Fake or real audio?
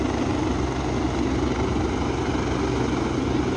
real